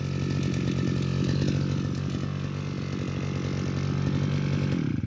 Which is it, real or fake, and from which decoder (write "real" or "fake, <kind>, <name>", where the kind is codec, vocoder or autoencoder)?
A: real